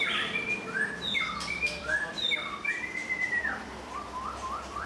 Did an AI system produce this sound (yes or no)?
yes